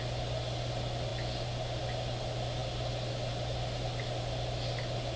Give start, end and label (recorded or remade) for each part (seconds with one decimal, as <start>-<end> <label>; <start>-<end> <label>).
0.0-5.2 recorded